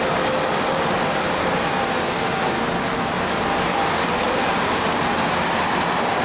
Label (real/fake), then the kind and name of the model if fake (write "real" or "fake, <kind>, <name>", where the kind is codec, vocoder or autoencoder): real